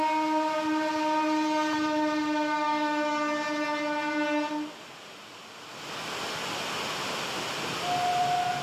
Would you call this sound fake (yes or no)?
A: no